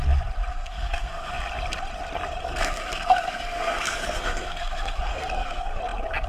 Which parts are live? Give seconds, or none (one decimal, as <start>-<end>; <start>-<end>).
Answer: 0.0-0.5; 1.3-2.5; 5.8-6.3